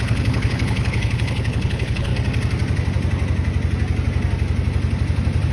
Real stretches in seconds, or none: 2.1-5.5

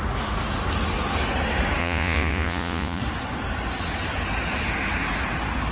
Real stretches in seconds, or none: 0.0-1.8; 3.0-5.7

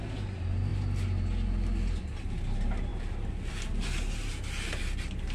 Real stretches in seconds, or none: 0.0-5.3

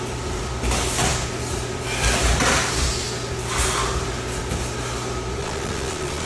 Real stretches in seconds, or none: 0.0-5.4